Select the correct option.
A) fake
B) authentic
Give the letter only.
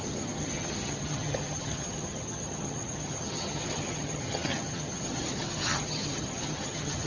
A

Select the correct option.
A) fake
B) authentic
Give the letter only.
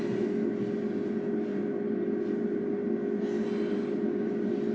B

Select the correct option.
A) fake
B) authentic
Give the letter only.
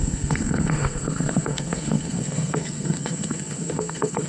A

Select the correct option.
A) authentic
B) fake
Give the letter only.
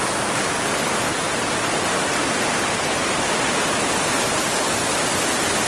A